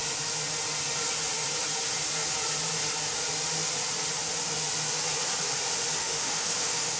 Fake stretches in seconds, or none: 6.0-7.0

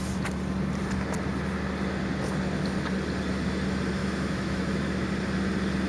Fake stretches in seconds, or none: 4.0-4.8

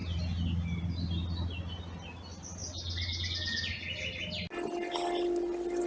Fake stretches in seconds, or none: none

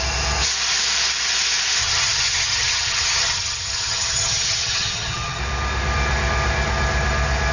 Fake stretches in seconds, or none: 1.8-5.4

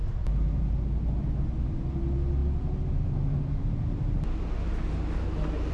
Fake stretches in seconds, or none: none

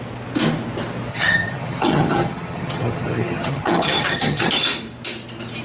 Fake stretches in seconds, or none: 1.1-4.5